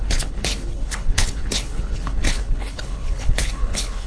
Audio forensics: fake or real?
fake